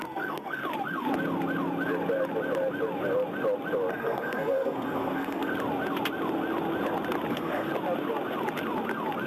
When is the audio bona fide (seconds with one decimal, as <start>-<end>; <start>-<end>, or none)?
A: 0.6-3.9; 5.5-7.3; 7.7-9.3